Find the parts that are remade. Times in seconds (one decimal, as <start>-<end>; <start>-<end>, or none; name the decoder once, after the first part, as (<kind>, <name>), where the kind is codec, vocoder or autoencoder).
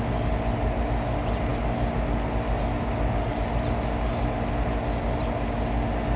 none